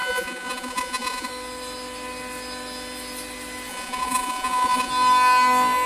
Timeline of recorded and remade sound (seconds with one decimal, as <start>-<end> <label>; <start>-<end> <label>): 0.0-1.3 remade; 1.3-3.7 recorded; 3.7-4.9 remade; 4.9-5.9 recorded